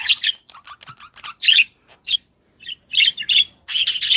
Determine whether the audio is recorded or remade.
recorded